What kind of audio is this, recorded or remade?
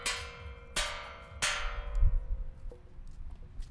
recorded